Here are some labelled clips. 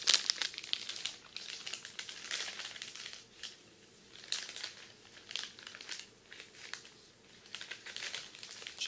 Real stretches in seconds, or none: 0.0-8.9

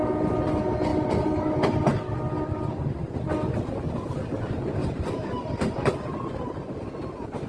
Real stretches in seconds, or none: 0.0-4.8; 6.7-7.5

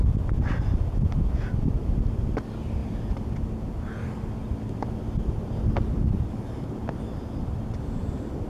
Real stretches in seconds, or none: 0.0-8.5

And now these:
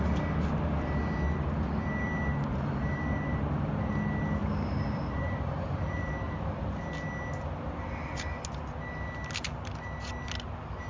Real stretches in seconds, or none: 0.0-2.5; 3.9-4.4; 6.1-10.9

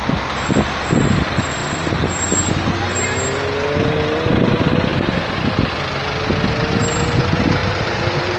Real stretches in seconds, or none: 0.0-4.9; 5.7-7.6

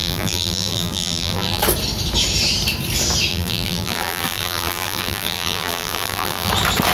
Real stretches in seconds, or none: 1.6-3.3; 6.5-6.9

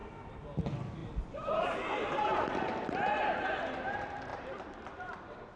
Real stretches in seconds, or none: 0.6-1.0; 2.9-4.3